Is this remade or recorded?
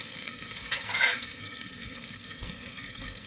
remade